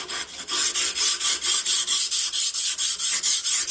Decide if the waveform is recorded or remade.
recorded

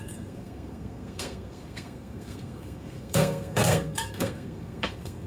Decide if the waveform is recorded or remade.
remade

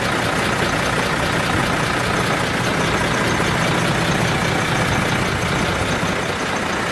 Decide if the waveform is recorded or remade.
recorded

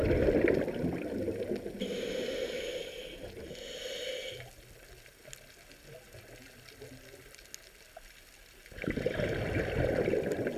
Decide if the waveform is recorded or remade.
recorded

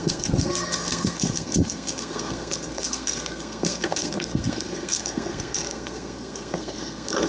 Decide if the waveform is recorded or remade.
remade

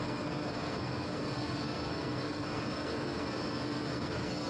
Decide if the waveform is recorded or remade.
remade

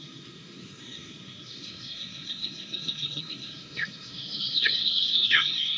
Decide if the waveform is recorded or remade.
remade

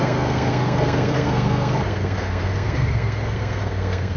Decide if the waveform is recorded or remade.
remade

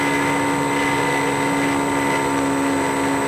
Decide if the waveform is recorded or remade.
recorded